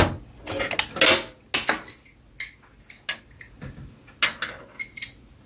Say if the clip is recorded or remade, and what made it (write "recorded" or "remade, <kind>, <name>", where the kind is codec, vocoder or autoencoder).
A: recorded